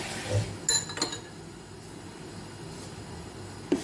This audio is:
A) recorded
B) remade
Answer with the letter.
A